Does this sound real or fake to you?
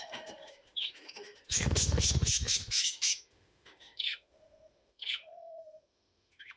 fake